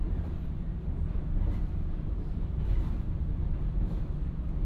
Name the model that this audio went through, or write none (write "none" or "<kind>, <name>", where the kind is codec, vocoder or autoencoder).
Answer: vocoder, BigVGAN v2